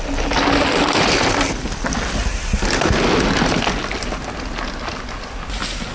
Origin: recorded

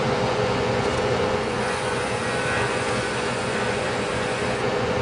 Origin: remade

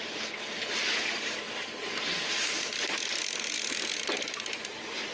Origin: recorded